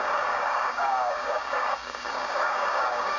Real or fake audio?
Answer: fake